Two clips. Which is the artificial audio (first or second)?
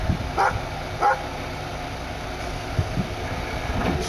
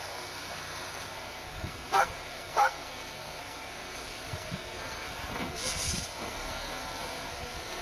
second